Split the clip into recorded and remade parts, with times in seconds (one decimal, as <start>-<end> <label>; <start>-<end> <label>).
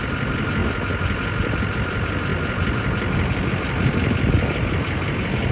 0.0-5.5 recorded